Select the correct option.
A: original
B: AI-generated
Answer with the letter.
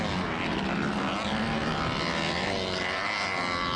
A